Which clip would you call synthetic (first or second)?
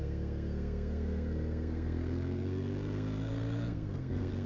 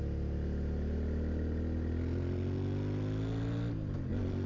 first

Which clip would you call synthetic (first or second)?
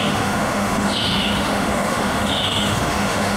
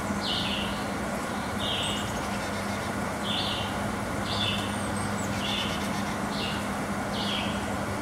first